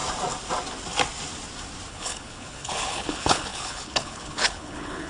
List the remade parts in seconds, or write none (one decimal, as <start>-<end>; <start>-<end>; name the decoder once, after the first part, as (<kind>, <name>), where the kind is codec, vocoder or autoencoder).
1.9-5.1 (codec, HILCodec)